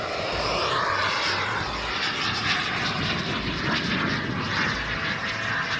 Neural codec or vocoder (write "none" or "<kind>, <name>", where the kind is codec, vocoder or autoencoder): none